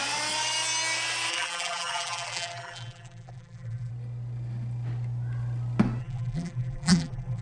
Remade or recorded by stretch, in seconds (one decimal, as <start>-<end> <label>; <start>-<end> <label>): 0.0-1.3 recorded; 1.3-3.9 remade; 3.9-6.0 recorded; 6.0-7.4 remade